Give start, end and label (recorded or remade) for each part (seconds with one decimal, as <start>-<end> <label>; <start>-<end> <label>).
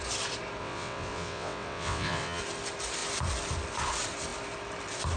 0.0-0.6 recorded; 0.6-2.4 remade; 2.4-5.2 recorded